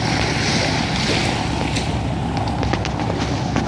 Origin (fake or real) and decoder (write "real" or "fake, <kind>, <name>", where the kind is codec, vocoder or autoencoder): real